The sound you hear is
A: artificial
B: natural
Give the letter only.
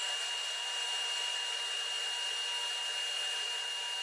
B